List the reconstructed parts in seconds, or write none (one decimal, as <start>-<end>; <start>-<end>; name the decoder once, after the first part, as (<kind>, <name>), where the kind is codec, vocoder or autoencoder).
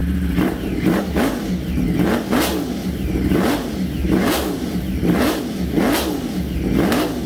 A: 0.0-1.0 (vocoder, BigVGAN v2); 2.8-5.4